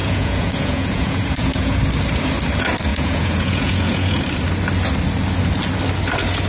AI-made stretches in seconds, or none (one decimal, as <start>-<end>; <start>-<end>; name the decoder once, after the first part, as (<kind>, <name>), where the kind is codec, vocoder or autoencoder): 0.0-1.8 (vocoder, Vocos); 2.9-4.2